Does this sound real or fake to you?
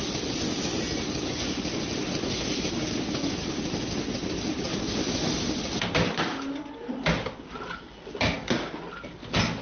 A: real